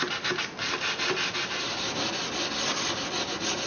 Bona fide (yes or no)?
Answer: yes